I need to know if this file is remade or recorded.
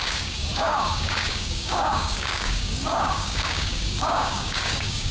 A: remade